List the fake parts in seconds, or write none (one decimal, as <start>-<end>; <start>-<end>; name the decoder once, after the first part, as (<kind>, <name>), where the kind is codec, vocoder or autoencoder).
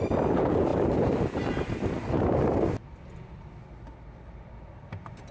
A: none